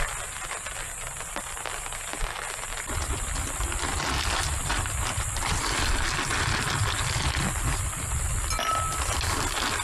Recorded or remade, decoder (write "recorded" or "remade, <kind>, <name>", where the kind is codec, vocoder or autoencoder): recorded